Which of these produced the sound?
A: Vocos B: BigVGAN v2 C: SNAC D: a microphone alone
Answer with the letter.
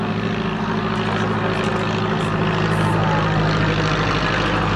D